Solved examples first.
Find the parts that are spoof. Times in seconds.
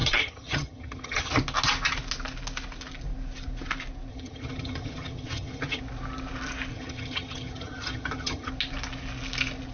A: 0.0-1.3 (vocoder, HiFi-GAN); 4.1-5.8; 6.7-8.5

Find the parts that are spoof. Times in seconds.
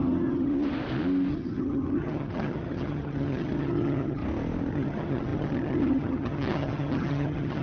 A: 0.0-0.5 (vocoder, HiFi-GAN); 1.3-4.2; 4.7-7.6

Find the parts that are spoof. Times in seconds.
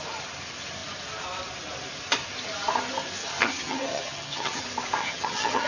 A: 3.2-4.6 (vocoder, HiFi-GAN); 5.0-5.7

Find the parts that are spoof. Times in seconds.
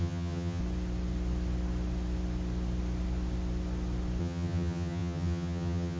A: 0.0-0.6 (vocoder, HiFi-GAN); 4.2-6.0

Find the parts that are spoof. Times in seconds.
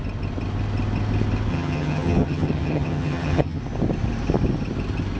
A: 1.5-3.6 (vocoder, HiFi-GAN)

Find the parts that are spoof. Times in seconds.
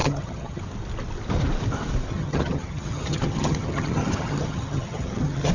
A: 0.0-0.6 (vocoder, HiFi-GAN); 2.1-5.5